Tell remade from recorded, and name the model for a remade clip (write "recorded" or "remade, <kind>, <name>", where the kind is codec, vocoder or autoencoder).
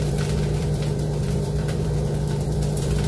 remade, vocoder, BigVGAN v2